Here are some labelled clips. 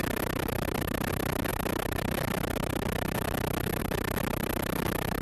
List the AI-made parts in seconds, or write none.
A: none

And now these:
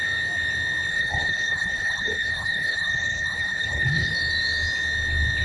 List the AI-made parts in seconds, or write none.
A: 0.9-4.1 (codec, HILCodec)

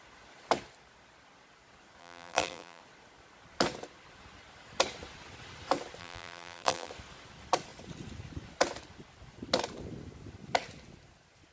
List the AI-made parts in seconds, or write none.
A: 2.0-2.8 (vocoder, BigVGAN v2); 6.0-6.9

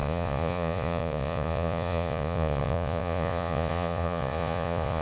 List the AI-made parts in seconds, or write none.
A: 0.0-5.0 (vocoder, Vocos)

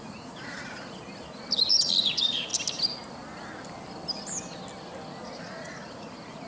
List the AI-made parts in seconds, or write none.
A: 0.0-1.0 (vocoder, Vocos); 2.0-2.5; 5.4-6.5

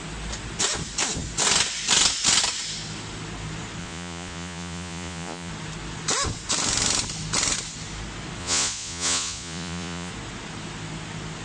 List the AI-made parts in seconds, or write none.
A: 3.8-5.5 (vocoder, Vocos); 8.4-10.1

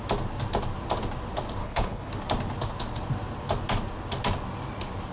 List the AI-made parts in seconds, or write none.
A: 1.6-2.1 (codec, HILCodec)